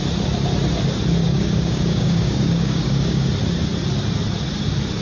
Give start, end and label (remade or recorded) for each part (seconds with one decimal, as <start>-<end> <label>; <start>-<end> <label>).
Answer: 0.0-1.2 recorded; 1.2-3.3 remade; 3.3-5.0 recorded